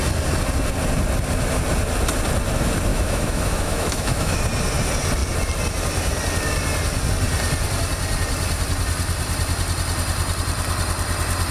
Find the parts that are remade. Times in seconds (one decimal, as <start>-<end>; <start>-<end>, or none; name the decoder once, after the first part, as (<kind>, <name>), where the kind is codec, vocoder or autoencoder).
2.9-4.4 (autoencoder, DAC-VAE)

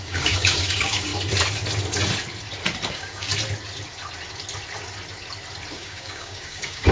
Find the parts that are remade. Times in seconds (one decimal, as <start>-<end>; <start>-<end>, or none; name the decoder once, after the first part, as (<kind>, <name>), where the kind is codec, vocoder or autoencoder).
0.0-1.1 (codec, DAC); 2.9-3.3; 5.7-6.9

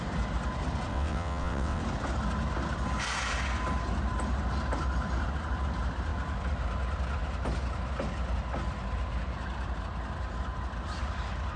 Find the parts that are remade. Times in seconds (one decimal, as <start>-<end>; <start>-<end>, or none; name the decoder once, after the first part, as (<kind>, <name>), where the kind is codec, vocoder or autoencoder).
0.9-1.8 (vocoder, WaveNeXt)

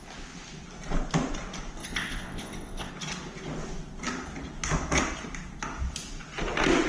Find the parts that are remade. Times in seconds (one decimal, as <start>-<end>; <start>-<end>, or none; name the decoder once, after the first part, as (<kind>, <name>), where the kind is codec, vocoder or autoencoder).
1.8-2.9 (vocoder, WaveNeXt)